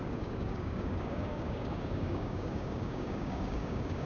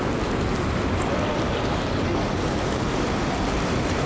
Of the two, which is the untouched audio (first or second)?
second